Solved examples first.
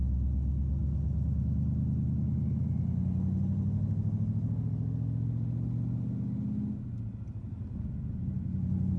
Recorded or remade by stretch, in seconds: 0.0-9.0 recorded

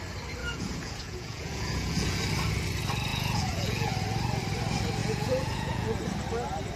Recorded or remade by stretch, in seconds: 0.0-0.4 recorded; 0.4-2.2 remade; 2.2-3.1 recorded; 3.1-3.9 remade; 3.9-5.0 recorded; 5.0-6.0 remade; 6.0-6.8 recorded

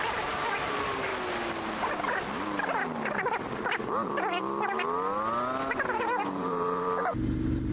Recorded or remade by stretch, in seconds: 0.0-1.1 remade; 1.1-5.7 recorded; 5.7-7.7 remade